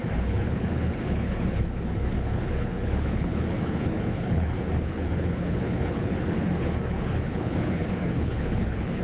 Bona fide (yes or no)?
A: no